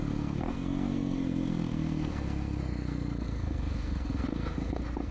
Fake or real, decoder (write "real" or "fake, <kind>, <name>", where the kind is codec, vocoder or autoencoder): fake, codec, SNAC